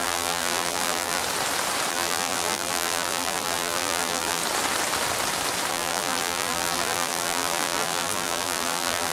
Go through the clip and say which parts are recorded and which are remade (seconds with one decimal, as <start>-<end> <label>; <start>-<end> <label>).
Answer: 0.0-1.2 remade; 1.2-1.9 recorded; 1.9-4.4 remade; 4.4-5.7 recorded; 5.7-9.1 remade